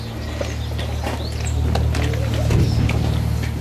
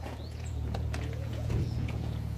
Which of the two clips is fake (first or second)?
second